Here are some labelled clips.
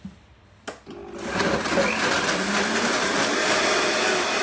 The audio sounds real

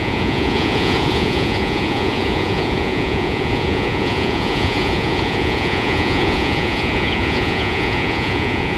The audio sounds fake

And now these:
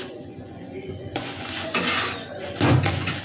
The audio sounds fake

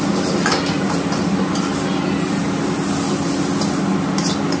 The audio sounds real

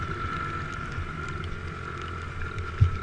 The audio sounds real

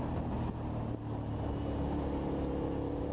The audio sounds real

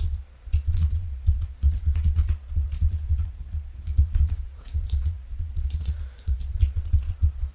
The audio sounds fake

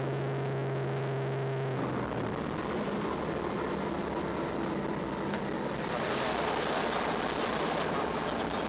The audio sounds real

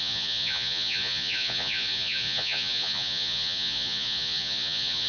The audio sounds fake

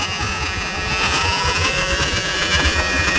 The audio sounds fake